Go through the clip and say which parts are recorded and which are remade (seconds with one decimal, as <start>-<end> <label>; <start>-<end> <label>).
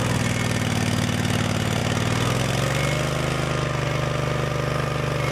0.0-5.3 recorded